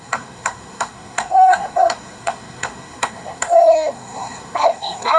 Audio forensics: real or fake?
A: fake